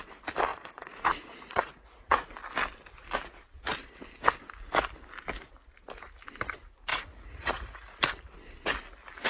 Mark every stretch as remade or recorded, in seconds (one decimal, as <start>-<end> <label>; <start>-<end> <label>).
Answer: 0.0-0.5 recorded; 0.5-2.3 remade; 2.3-6.9 recorded; 6.9-8.0 remade; 8.0-9.3 recorded